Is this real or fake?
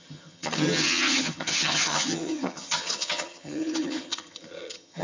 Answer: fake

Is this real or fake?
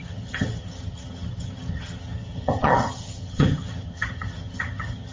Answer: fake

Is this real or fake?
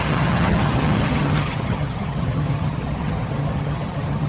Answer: fake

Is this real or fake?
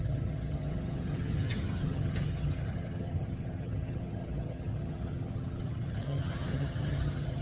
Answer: fake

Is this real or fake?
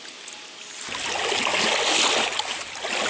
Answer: real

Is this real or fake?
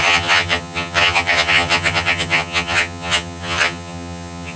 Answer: fake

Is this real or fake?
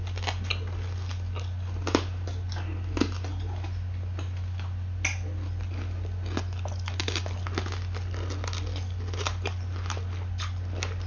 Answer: real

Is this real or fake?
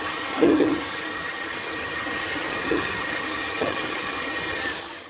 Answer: fake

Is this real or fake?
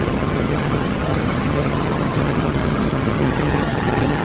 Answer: fake